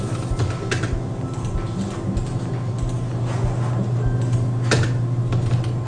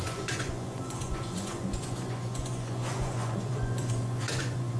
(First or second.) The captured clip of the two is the first